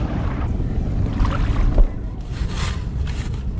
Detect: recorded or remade recorded